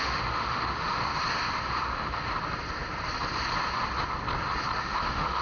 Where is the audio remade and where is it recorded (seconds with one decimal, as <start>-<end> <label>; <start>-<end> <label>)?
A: 0.0-1.1 remade; 1.1-1.8 recorded; 1.8-2.3 remade; 2.3-4.8 recorded; 4.8-5.4 remade